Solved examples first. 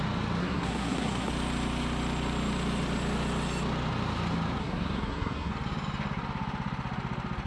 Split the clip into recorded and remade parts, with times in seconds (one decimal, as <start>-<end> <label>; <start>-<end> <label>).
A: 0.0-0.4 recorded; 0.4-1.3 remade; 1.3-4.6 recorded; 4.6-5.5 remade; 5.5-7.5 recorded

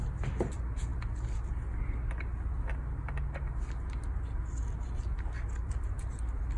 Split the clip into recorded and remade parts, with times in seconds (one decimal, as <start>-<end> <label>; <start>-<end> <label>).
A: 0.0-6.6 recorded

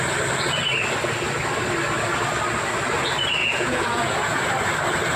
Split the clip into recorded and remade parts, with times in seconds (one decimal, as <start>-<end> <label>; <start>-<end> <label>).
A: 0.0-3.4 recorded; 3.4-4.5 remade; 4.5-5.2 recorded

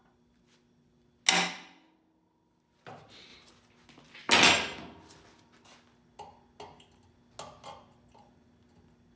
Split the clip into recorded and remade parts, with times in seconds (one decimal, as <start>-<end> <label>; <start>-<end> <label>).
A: 0.0-9.2 recorded